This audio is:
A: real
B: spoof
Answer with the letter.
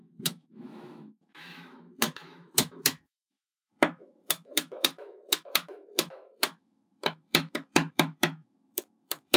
B